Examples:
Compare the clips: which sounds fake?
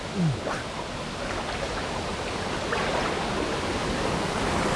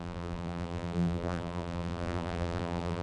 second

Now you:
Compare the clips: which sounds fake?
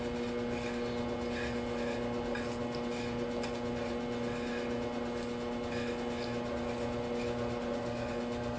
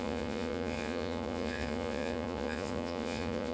second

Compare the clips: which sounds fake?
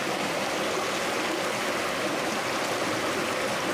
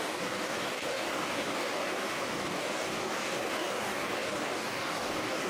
second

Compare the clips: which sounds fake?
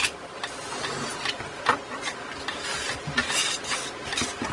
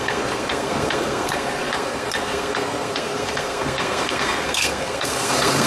second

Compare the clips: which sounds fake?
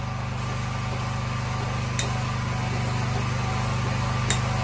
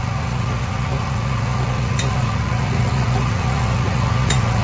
second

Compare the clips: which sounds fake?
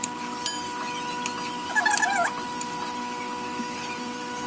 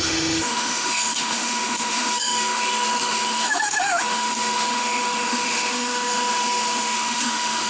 second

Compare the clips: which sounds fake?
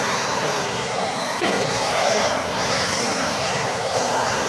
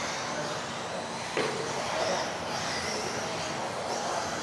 first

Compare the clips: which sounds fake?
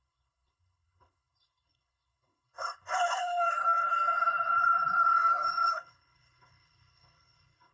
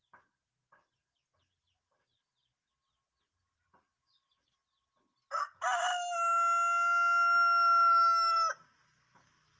first